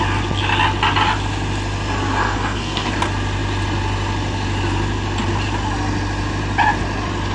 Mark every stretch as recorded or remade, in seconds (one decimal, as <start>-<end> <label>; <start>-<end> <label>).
0.0-2.2 recorded; 2.2-2.9 remade; 2.9-7.3 recorded

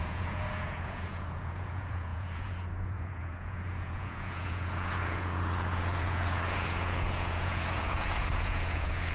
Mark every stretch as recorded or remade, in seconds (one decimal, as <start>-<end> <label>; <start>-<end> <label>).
0.0-9.1 remade

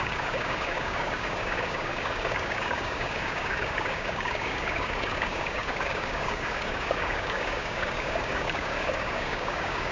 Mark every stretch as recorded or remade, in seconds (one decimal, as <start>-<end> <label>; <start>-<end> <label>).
0.0-9.9 remade

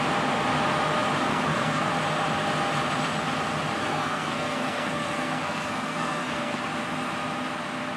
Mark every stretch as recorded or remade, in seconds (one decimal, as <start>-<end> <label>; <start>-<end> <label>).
0.0-1.3 recorded; 1.3-1.9 remade; 1.9-3.8 recorded; 3.8-6.6 remade; 6.6-8.0 recorded

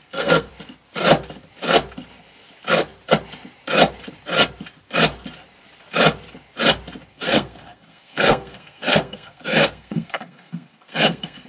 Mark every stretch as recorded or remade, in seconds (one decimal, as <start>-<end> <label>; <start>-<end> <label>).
0.0-0.5 remade; 0.5-7.1 recorded; 7.1-11.5 remade

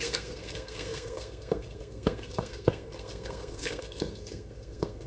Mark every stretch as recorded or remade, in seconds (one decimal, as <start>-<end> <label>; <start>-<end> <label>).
0.0-5.1 remade

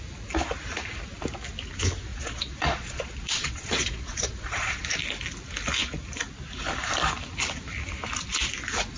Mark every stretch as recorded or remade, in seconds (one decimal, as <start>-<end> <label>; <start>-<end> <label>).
0.0-2.1 recorded; 2.1-4.8 remade; 4.8-9.0 recorded